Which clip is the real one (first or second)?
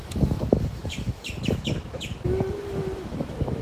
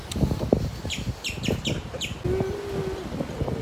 second